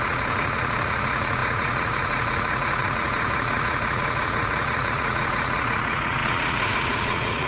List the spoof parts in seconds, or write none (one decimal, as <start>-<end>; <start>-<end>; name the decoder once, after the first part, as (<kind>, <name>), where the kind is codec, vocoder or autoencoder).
0.0-7.5 (vocoder, Vocos)